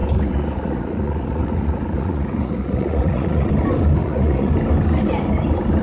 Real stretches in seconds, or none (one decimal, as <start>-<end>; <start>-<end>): 3.5-4.0; 4.5-5.8